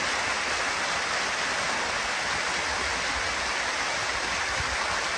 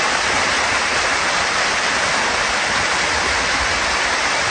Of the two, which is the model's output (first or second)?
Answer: second